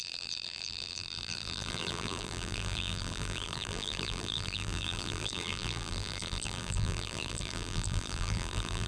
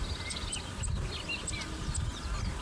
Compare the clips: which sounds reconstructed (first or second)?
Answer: first